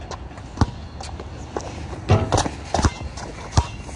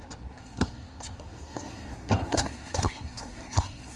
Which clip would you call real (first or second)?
first